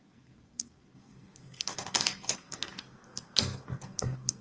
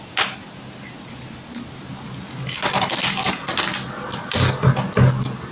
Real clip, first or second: second